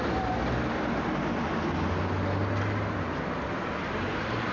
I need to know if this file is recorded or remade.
recorded